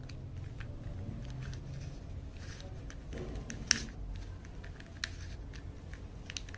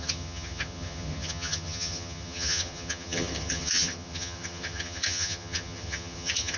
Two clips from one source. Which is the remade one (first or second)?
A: second